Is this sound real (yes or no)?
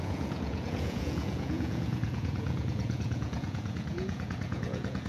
no